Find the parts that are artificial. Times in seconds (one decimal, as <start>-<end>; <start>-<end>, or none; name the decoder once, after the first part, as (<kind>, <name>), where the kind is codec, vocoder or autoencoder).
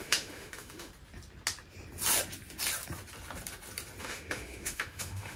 0.0-0.9 (autoencoder, DAC-VAE); 4.0-5.4